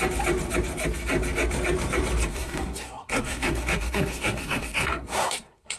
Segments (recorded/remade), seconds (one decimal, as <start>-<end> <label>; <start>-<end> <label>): 0.0-2.3 recorded; 2.3-5.8 remade